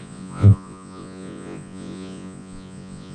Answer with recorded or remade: remade